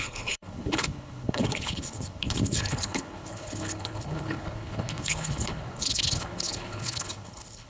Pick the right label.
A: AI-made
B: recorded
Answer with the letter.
A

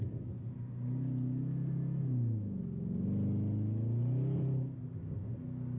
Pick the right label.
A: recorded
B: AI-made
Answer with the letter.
A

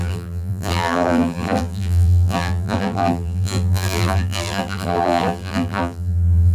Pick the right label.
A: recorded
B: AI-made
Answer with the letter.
B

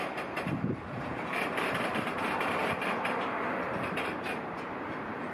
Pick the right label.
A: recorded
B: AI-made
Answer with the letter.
B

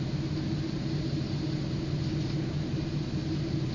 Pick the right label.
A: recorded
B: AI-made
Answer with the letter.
A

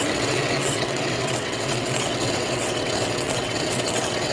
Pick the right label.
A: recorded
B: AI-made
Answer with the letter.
B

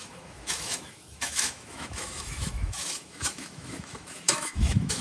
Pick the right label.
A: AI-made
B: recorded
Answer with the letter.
A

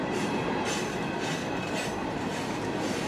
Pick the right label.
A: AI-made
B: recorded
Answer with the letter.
A